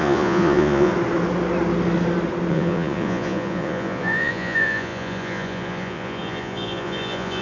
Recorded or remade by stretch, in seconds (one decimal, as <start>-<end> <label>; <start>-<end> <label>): 0.0-0.9 remade; 0.9-2.5 recorded; 2.5-7.4 remade